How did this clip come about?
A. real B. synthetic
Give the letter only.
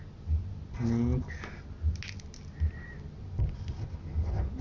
A